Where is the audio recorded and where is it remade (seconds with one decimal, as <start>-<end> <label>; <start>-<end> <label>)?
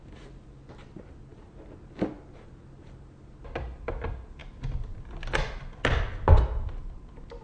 0.0-7.4 recorded